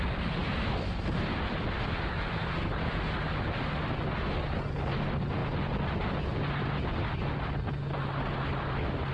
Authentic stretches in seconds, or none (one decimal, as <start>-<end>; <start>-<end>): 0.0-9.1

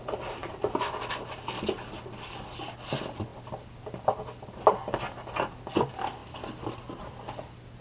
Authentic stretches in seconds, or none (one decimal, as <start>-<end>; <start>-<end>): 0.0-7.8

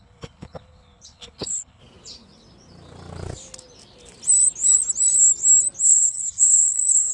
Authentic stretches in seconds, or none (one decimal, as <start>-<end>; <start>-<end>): 1.8-5.8

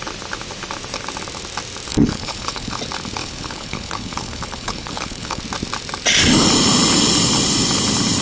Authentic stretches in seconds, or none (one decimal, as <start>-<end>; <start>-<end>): 0.0-1.9; 2.8-3.2; 5.4-8.2

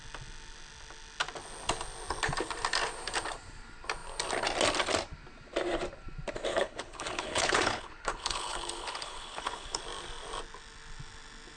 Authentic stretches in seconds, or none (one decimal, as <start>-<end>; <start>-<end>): 0.0-6.5; 9.8-11.6

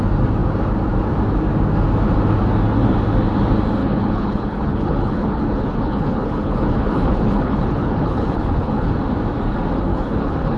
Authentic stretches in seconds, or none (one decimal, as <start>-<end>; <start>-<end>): 0.0-3.8; 8.9-9.9

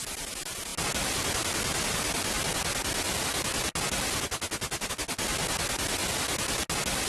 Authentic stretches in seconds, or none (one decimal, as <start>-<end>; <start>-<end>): 0.0-7.1

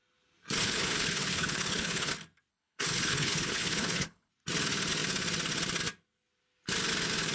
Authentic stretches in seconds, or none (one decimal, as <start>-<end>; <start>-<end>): 0.0-0.6; 2.1-2.5; 4.3-7.3